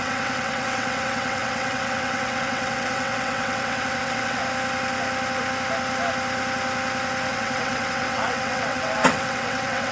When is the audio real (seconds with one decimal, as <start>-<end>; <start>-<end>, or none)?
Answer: 4.4-7.3